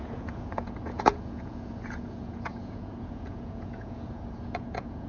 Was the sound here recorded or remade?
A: remade